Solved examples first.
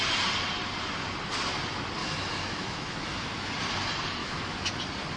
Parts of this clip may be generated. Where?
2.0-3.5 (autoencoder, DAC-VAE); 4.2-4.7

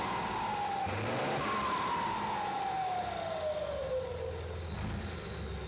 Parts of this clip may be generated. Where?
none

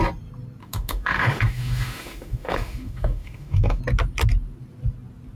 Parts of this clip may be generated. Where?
0.6-3.8 (autoencoder, DAC-VAE)

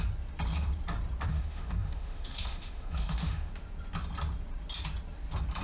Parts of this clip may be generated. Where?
1.3-3.5 (autoencoder, DAC-VAE)